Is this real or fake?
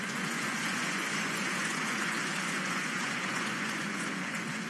fake